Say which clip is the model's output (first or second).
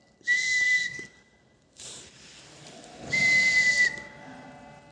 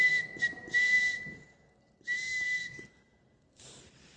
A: first